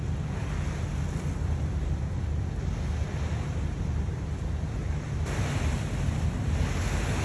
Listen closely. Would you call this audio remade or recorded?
recorded